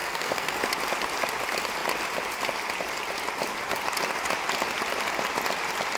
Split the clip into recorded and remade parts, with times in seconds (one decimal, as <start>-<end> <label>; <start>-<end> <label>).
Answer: 0.0-0.7 remade; 0.7-6.0 recorded